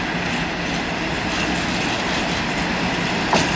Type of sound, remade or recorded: recorded